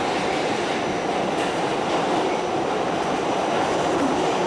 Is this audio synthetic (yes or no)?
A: no